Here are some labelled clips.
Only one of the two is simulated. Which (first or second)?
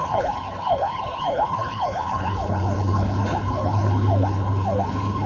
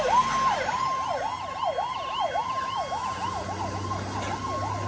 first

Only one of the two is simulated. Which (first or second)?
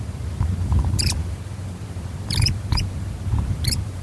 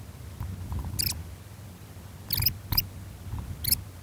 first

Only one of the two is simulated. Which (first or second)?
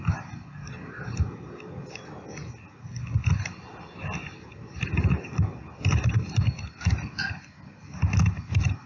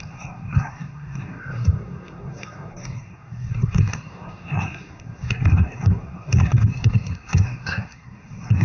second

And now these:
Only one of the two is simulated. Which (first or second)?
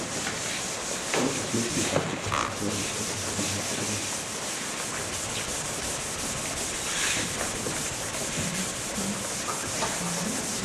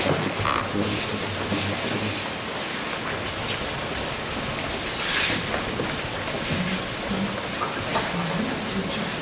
first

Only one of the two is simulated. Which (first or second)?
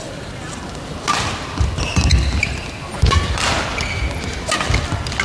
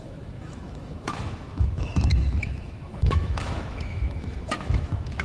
second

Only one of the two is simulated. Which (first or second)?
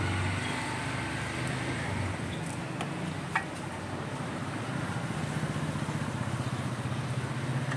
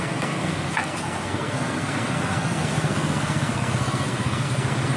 second